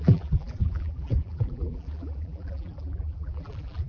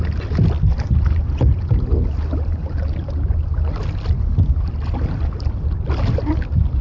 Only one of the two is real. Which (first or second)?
second